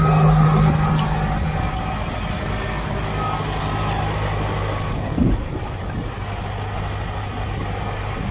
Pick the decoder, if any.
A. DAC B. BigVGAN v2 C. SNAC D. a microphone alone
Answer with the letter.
D